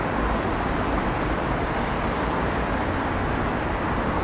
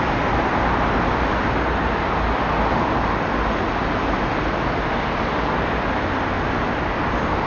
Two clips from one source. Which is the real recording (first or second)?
second